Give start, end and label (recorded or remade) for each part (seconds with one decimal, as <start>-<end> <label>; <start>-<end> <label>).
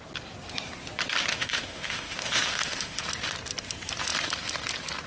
0.0-1.3 recorded; 1.3-3.0 remade; 3.0-5.1 recorded